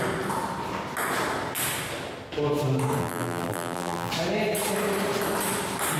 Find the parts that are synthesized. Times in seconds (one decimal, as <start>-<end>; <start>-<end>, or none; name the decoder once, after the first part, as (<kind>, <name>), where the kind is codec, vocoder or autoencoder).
3.0-4.1 (vocoder, BigVGAN v2)